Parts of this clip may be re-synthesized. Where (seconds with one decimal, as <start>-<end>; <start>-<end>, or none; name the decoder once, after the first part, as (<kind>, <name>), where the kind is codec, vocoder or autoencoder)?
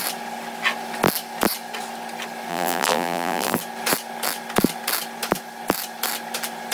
2.5-3.6 (vocoder, BigVGAN v2)